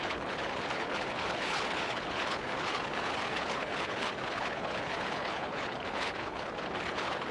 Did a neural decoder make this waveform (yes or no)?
yes